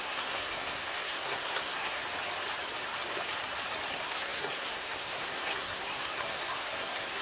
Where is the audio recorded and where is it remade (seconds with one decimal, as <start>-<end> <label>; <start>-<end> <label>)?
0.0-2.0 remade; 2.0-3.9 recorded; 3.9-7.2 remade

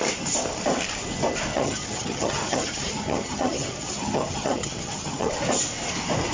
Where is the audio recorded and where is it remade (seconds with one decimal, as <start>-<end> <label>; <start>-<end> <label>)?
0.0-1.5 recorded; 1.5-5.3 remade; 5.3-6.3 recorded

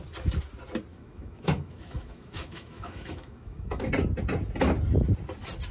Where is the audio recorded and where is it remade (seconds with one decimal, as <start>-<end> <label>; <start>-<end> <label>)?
0.0-0.9 recorded; 0.9-3.9 remade; 3.9-5.7 recorded

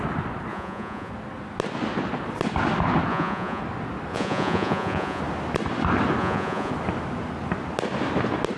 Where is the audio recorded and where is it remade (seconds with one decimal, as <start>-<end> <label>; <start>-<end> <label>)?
0.0-0.5 recorded; 0.5-1.1 remade; 1.1-3.1 recorded; 3.1-3.6 remade; 3.6-4.1 recorded; 4.1-5.2 remade; 5.2-6.2 recorded; 6.2-6.7 remade; 6.7-8.6 recorded